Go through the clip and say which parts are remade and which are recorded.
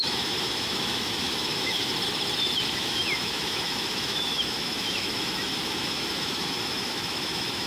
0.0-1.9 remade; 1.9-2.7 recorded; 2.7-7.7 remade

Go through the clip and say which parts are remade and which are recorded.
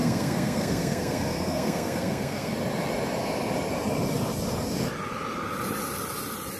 0.0-2.5 remade; 2.5-6.6 recorded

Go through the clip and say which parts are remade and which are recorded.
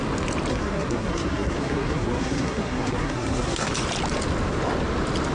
0.0-0.5 recorded; 0.5-3.7 remade; 3.7-5.3 recorded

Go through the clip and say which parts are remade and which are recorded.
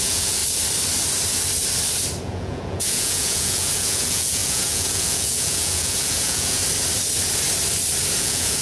0.0-0.4 remade; 0.4-2.2 recorded; 2.2-6.6 remade; 6.6-8.2 recorded; 8.2-8.6 remade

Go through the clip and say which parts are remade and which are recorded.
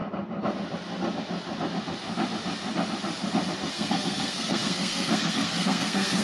0.0-3.7 recorded; 3.7-6.2 remade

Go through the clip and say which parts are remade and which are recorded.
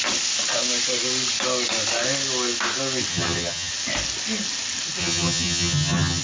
0.0-3.1 recorded; 3.1-3.7 remade; 3.7-5.0 recorded; 5.0-6.2 remade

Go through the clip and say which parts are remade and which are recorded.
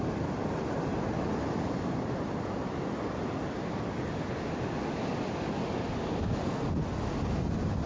0.0-7.9 recorded